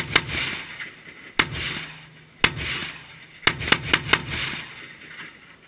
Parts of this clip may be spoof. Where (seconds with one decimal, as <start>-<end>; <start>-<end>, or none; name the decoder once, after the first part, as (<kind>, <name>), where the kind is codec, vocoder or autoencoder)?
4.2-4.7 (vocoder, BigVGAN v2)